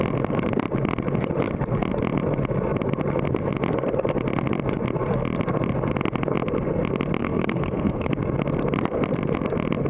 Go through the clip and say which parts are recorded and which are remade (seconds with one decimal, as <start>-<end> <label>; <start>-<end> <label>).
0.0-7.2 recorded; 7.2-8.1 remade; 8.1-9.9 recorded